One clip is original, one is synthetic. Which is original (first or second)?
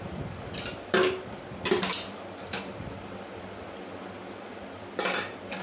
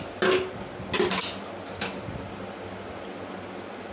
second